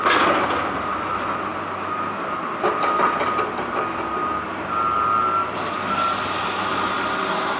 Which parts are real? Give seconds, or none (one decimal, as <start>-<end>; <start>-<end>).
0.0-7.6